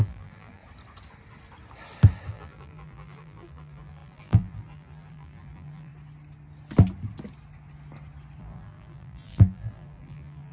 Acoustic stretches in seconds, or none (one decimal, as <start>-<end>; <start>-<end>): 0.6-2.3; 5.9-8.4